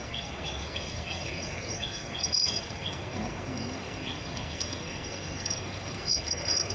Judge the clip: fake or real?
fake